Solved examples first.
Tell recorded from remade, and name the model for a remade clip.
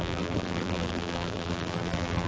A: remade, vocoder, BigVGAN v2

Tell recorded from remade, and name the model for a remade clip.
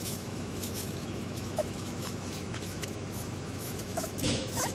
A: remade, autoencoder, DAC-VAE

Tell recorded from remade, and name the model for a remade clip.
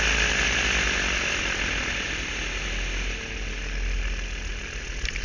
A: recorded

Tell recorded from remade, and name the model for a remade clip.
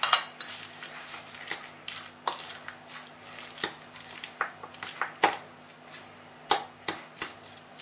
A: recorded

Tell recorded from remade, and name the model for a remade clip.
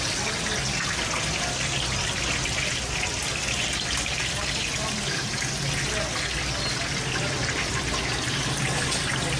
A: recorded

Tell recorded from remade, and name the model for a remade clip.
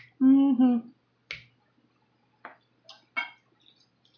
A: recorded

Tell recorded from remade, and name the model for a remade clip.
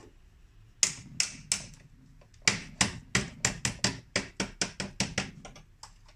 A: recorded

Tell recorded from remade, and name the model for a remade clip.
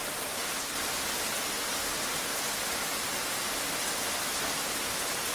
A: recorded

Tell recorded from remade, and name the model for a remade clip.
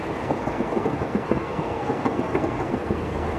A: remade, codec, SNAC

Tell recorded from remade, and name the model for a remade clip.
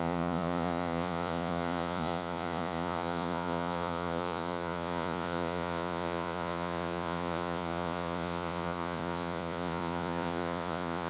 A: remade, vocoder, Vocos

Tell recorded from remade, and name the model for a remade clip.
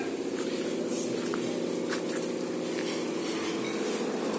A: recorded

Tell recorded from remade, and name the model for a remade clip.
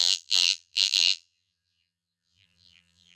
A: remade, vocoder, BigVGAN v2